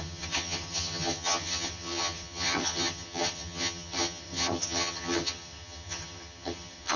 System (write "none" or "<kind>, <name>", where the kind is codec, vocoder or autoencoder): vocoder, HiFi-GAN